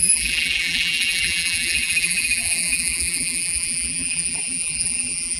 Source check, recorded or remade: remade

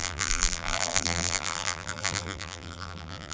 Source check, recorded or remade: remade